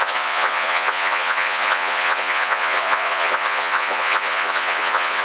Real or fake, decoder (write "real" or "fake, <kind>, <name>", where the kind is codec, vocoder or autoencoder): fake, vocoder, Vocos